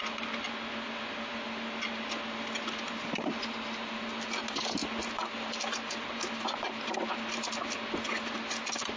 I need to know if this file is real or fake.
real